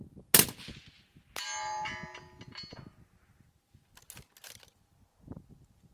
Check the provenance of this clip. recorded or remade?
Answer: recorded